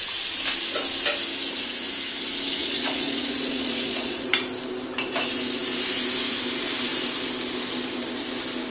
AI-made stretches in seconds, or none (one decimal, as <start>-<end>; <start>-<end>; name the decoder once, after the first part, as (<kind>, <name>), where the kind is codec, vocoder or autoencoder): 2.6-4.3 (vocoder, Vocos)